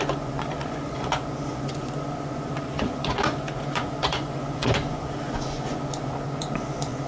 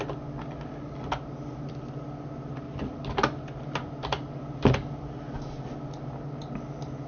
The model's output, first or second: first